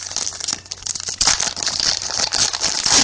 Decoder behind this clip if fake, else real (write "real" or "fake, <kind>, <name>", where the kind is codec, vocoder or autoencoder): real